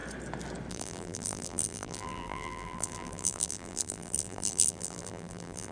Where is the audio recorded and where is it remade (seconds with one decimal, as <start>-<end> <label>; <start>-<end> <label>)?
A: 0.0-0.7 recorded; 0.7-5.7 remade